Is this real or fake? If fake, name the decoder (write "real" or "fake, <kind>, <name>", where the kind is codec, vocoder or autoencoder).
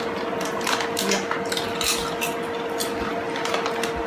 real